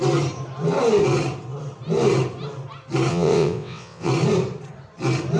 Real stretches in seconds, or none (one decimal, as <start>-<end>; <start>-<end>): 0.0-3.1; 4.1-5.4